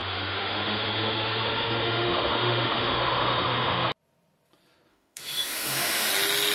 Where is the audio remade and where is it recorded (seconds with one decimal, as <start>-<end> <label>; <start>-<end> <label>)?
0.0-3.9 remade; 3.9-4.9 recorded; 4.9-6.1 remade; 6.1-6.5 recorded